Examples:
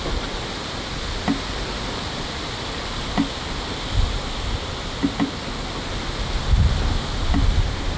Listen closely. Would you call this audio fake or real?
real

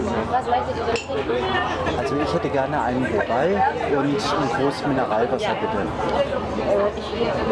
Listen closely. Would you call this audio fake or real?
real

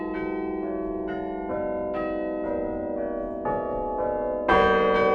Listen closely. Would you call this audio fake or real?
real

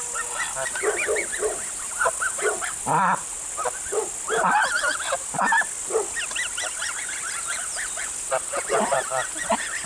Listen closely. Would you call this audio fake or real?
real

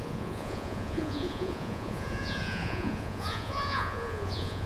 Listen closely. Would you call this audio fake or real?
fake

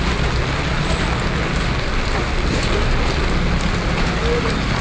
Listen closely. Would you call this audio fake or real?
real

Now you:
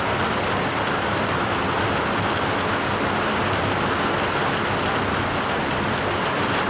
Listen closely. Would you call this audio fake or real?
real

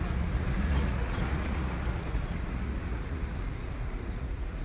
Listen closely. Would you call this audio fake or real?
fake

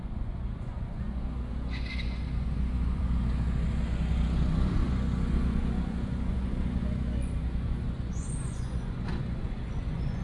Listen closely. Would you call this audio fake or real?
fake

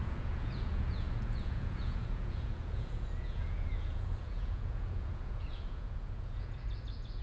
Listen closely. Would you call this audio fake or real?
fake